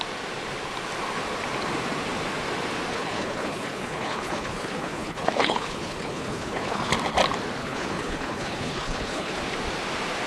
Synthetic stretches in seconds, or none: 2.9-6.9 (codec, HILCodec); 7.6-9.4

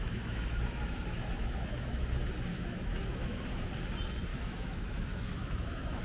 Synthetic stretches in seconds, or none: 0.0-2.0 (autoencoder, DAC-VAE); 2.5-3.7; 4.3-6.0